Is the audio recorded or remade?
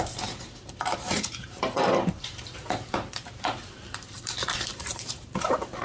remade